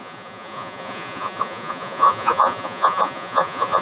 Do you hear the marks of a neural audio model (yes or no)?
yes